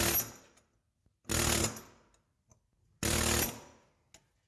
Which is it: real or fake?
real